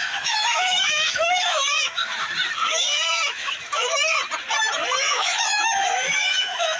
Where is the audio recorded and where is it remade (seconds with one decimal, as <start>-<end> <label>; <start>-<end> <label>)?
0.0-2.0 remade; 2.0-2.7 recorded; 2.7-4.0 remade; 4.0-5.1 recorded; 5.1-6.8 remade